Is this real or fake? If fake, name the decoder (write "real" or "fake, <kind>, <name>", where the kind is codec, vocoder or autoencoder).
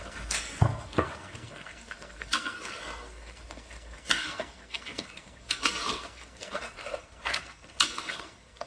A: fake, codec, SNAC